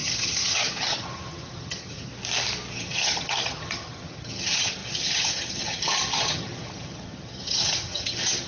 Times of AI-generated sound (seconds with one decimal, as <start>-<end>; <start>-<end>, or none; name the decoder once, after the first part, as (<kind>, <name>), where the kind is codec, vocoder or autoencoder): 0.0-2.1 (vocoder, HiFi-GAN); 2.7-8.5